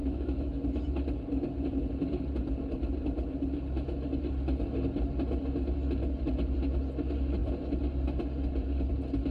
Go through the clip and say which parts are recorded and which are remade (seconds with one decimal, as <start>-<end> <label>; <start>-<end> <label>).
0.0-0.8 remade; 0.8-9.3 recorded